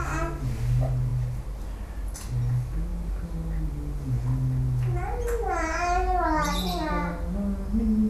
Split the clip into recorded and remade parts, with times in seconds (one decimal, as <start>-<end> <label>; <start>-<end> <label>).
0.0-1.1 recorded; 1.1-1.6 remade; 1.6-8.1 recorded